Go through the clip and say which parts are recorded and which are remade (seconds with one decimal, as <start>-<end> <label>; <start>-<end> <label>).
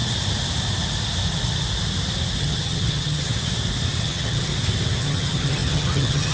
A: 0.0-2.4 recorded; 2.4-3.3 remade; 3.3-4.0 recorded; 4.0-4.5 remade; 4.5-5.0 recorded; 5.0-6.3 remade